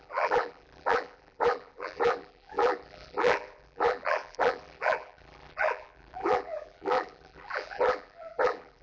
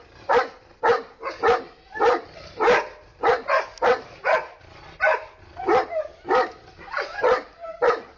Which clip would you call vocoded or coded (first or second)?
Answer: first